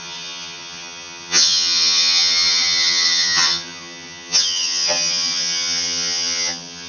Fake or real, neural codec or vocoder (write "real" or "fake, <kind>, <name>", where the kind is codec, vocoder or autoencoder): fake, vocoder, HiFi-GAN